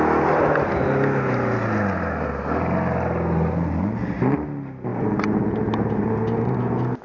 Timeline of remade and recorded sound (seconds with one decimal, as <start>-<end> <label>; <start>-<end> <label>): 0.0-7.0 recorded